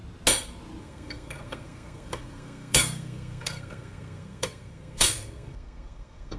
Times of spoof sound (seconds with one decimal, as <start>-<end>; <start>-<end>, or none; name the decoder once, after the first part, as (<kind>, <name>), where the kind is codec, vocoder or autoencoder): 0.8-6.4 (codec, SNAC)